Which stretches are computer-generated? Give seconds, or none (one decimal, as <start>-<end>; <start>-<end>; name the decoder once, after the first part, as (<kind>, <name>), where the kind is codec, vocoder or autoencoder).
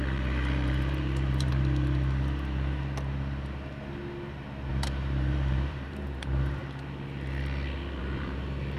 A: 0.0-1.5 (vocoder, BigVGAN v2); 4.7-6.6; 8.0-8.8